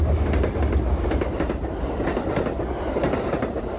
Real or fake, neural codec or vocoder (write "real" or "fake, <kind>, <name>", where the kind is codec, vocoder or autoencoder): real